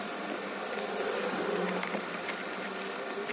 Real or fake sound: real